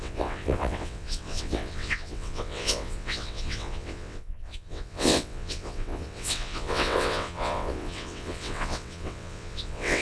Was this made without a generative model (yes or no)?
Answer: no